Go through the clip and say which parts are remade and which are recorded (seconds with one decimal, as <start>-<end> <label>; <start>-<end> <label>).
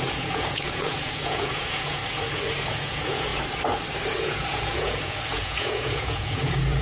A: 0.0-2.0 remade; 2.0-2.7 recorded; 2.7-3.3 remade; 3.3-4.1 recorded; 4.1-6.8 remade